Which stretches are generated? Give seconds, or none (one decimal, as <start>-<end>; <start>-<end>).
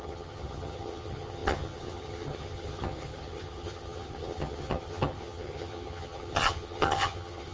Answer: 0.0-7.5